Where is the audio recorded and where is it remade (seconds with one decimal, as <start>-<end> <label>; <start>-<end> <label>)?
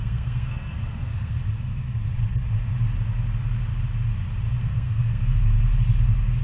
0.0-1.4 remade; 1.4-4.6 recorded; 4.6-5.4 remade; 5.4-6.4 recorded